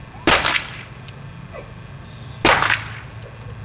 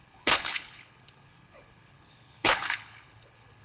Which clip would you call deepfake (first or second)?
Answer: second